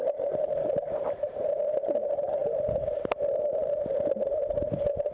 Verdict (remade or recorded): recorded